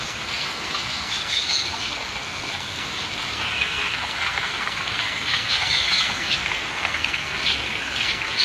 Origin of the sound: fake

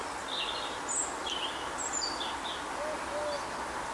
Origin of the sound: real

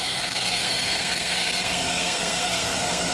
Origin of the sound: fake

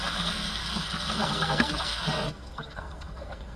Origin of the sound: fake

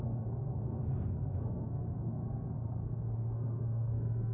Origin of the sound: fake